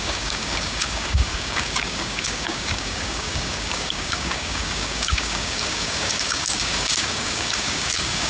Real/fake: fake